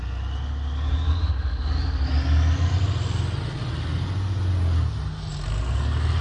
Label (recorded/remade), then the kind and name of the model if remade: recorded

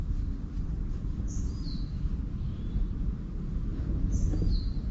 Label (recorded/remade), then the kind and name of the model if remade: recorded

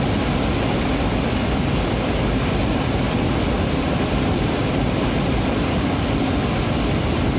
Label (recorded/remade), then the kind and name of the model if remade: recorded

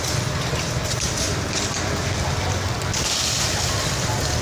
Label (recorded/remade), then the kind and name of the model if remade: recorded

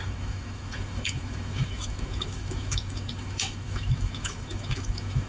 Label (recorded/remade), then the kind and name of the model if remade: remade, autoencoder, DAC-VAE